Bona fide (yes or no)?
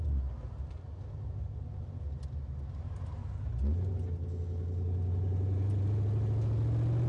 yes